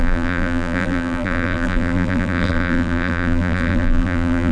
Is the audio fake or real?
fake